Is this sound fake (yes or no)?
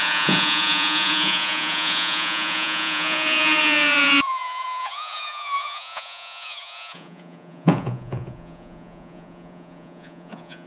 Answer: yes